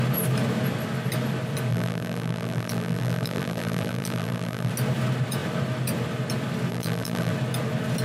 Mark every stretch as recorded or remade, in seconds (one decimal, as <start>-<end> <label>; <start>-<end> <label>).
0.0-1.7 recorded; 1.7-4.7 remade; 4.7-6.7 recorded; 6.7-7.3 remade; 7.3-8.0 recorded